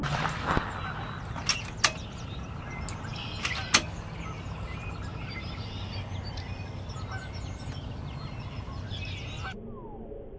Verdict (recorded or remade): recorded